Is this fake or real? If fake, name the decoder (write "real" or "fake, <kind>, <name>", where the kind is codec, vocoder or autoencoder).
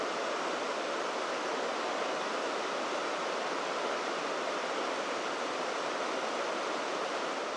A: fake, vocoder, BigVGAN v2